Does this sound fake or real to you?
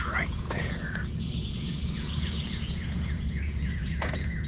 fake